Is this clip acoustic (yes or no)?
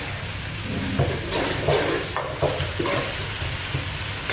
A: yes